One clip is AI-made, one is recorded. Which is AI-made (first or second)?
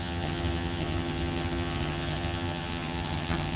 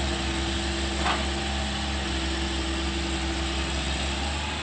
first